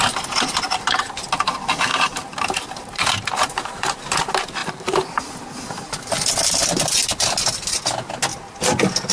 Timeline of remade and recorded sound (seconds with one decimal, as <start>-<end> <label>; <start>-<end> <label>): 0.0-1.9 recorded; 1.9-4.1 remade; 4.1-4.6 recorded; 4.6-5.2 remade; 5.2-9.1 recorded